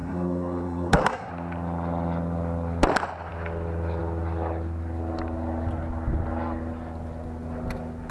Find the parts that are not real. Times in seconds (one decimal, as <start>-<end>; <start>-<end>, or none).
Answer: 0.0-1.3